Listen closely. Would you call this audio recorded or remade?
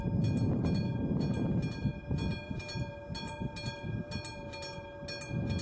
recorded